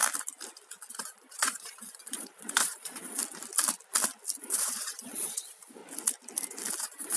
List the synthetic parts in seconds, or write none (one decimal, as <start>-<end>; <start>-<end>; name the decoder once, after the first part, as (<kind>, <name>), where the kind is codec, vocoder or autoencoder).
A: 0.9-3.2 (vocoder, Vocos); 4.4-5.8; 6.8-7.2

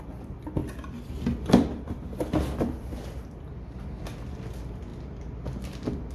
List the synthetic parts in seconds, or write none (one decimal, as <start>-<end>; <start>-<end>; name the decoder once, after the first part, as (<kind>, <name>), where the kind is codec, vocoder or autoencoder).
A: none